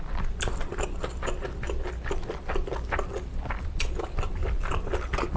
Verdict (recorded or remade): recorded